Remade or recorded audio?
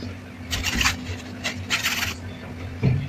recorded